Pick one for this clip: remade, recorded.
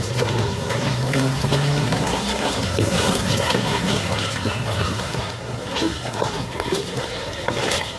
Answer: remade